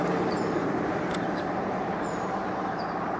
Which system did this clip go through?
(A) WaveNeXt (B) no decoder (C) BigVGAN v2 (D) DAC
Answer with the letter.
C